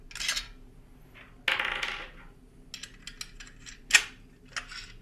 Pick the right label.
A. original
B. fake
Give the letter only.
A